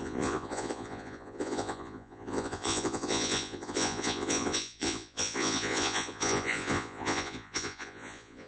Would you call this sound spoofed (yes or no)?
yes